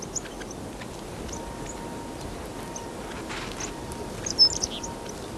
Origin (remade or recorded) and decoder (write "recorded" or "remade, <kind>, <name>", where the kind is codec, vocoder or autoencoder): recorded